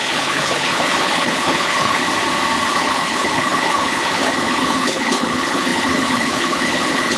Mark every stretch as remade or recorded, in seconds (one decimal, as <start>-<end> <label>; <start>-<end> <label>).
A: 0.0-2.0 remade; 2.0-2.7 recorded; 2.7-7.2 remade